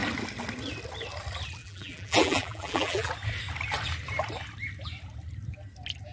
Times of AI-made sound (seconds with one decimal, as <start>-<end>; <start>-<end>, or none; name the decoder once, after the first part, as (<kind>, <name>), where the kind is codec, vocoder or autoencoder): 1.6-3.1 (vocoder, BigVGAN v2)